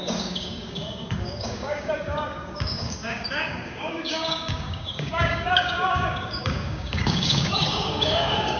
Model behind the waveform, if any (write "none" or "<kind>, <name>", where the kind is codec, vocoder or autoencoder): codec, DAC